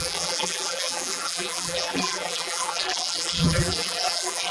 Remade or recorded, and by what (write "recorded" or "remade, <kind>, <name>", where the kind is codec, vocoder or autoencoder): remade, vocoder, BigVGAN v2